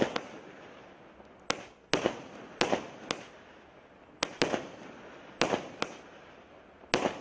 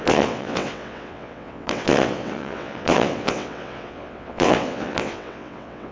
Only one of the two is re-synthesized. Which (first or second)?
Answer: second